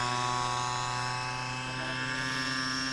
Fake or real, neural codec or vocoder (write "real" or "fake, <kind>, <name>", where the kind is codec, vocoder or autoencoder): real